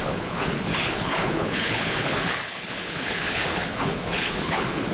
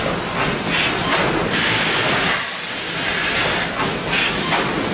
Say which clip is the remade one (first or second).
first